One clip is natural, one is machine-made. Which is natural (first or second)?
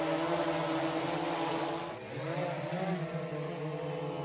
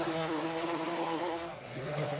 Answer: first